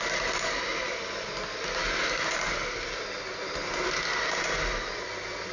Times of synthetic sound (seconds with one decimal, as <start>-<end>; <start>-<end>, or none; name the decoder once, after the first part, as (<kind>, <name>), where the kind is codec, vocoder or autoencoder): none